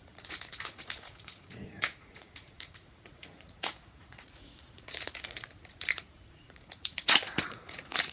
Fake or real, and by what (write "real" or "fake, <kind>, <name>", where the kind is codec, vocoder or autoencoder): fake, vocoder, Vocos